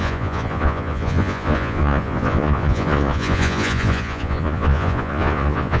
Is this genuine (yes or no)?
no